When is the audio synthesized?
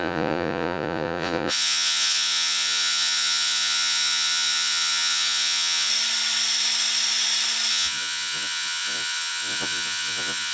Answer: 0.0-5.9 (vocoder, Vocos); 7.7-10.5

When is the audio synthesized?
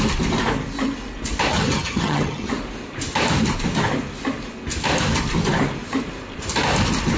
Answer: 1.5-2.5 (vocoder, HiFi-GAN)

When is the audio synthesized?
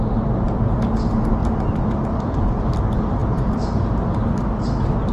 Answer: 1.4-2.8 (vocoder, BigVGAN v2); 3.2-3.9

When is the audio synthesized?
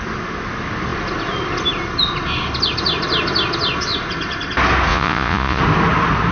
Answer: 4.9-5.6 (vocoder, Vocos)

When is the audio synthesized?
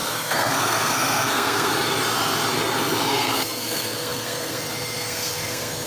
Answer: 0.0-1.7 (codec, SNAC); 3.1-5.9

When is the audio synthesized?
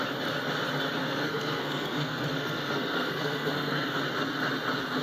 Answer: 1.0-4.0 (codec, SNAC)